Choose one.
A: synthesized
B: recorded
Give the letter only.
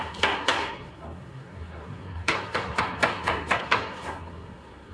A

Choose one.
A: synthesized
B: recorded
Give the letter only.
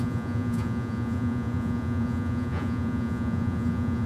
A